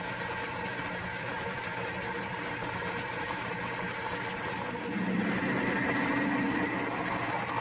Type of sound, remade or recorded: recorded